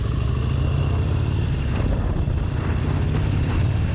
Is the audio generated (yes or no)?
no